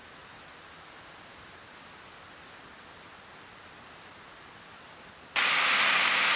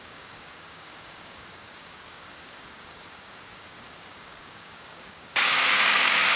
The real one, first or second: first